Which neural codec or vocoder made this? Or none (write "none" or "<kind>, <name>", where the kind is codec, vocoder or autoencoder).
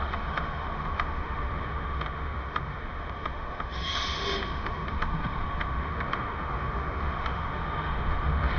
autoencoder, DAC-VAE